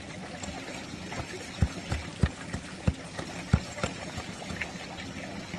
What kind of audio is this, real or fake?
real